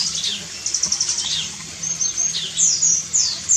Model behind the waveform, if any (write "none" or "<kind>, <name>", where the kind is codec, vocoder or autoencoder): none